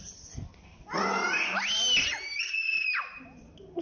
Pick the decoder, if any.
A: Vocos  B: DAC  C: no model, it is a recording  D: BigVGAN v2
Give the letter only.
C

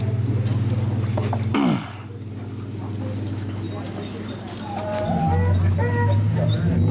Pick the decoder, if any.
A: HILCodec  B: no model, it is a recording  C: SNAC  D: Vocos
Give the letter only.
B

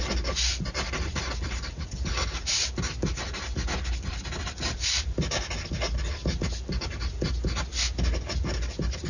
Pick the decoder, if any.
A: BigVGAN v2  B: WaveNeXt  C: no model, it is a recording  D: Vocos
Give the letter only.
C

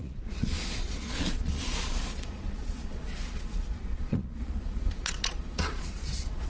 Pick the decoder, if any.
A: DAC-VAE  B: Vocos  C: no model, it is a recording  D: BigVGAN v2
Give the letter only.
B